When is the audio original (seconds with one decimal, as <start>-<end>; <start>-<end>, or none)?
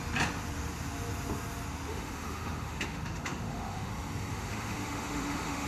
0.0-1.9; 3.9-4.3